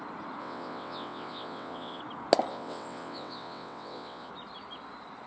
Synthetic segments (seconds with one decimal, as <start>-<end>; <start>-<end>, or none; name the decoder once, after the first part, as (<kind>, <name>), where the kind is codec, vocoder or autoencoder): 0.4-2.0 (vocoder, WaveNeXt); 2.5-4.3